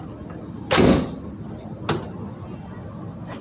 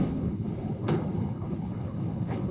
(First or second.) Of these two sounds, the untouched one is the first